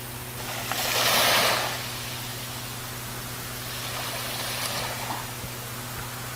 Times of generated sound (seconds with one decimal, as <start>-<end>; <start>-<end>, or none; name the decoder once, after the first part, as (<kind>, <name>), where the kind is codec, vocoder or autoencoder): 0.0-2.3 (vocoder, BigVGAN v2)